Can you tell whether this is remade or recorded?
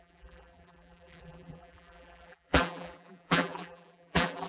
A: remade